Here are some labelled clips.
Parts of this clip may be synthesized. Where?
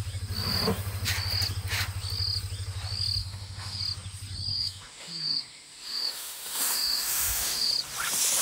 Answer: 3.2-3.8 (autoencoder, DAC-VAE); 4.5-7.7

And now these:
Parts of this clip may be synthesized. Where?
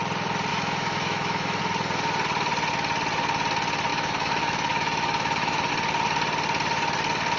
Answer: 0.5-1.6 (autoencoder, DAC-VAE); 3.9-5.7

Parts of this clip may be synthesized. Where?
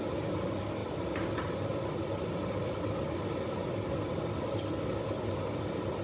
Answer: none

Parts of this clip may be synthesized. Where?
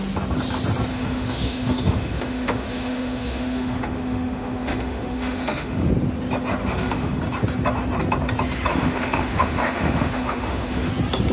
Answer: 0.9-5.9 (autoencoder, DAC-VAE); 6.6-7.2; 8.7-10.9